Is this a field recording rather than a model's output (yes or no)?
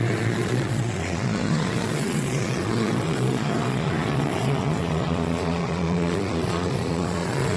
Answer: no